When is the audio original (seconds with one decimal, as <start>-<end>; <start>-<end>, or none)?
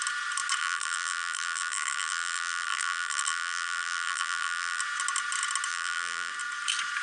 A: 0.0-0.6; 4.8-5.7; 6.3-7.0